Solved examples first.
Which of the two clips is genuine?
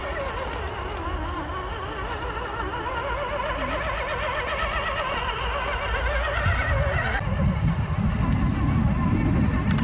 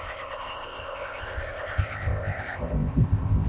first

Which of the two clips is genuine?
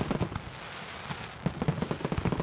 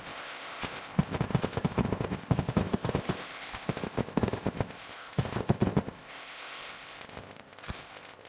first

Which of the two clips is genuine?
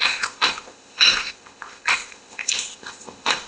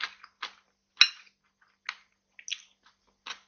second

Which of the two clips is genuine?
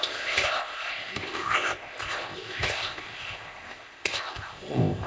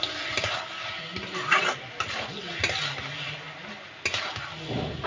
second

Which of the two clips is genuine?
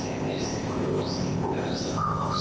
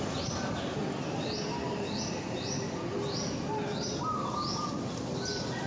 second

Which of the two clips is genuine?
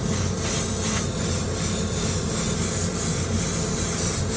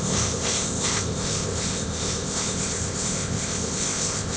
first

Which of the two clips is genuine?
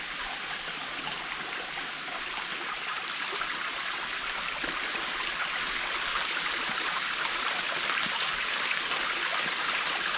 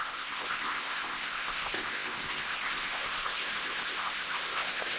first